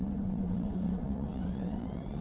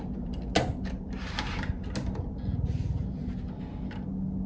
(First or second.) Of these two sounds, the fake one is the first